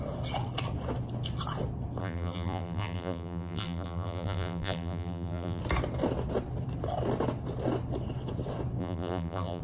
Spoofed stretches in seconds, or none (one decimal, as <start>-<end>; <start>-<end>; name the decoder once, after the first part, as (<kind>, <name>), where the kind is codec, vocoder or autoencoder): 2.0-5.6 (vocoder, BigVGAN v2); 8.8-9.6